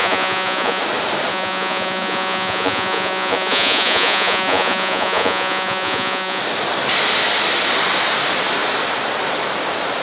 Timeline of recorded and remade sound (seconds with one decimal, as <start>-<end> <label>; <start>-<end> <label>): 0.0-0.8 remade; 0.8-1.3 recorded; 1.3-6.4 remade; 6.4-10.0 recorded